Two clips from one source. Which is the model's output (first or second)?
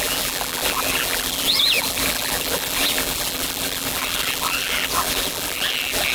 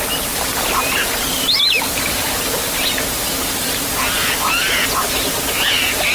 first